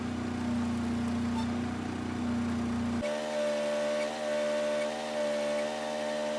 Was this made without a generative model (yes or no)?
yes